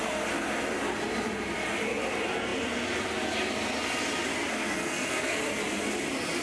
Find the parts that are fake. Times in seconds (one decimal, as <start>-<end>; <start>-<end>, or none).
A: 4.5-5.4